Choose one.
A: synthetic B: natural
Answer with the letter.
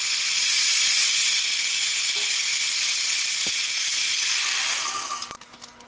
B